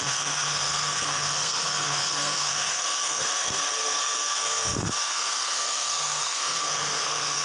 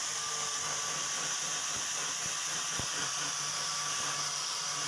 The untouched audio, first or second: second